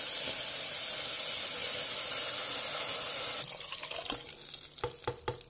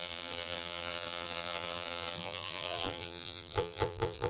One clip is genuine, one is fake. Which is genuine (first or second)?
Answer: first